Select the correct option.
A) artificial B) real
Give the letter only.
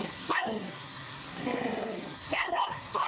A